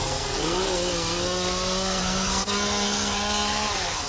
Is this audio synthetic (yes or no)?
yes